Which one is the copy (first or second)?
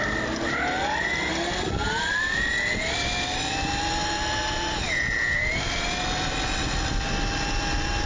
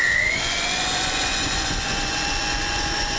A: second